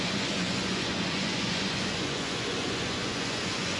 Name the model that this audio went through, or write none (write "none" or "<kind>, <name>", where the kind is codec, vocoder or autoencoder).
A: vocoder, Vocos